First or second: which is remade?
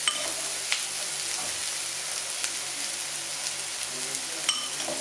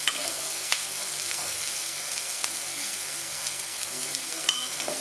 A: second